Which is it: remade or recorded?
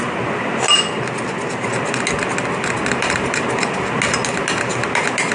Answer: recorded